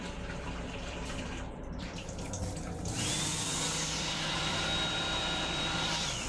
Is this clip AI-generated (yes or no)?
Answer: yes